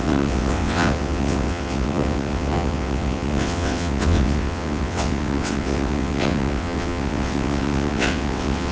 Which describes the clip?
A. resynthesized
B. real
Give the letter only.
A